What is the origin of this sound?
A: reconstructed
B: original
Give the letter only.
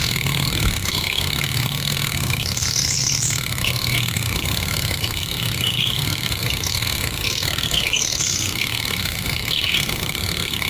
A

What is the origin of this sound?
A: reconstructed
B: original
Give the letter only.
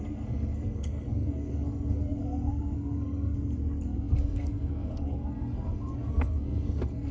A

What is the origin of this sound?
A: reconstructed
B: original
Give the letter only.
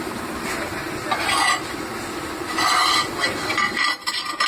B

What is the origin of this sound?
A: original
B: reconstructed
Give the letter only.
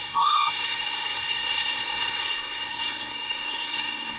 B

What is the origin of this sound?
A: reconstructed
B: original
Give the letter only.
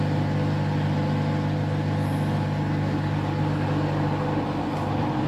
B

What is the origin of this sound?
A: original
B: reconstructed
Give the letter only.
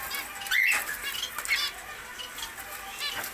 A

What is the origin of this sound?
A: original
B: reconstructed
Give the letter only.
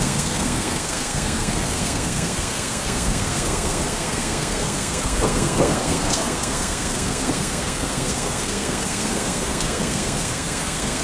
B